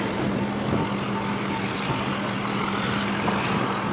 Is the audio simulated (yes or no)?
no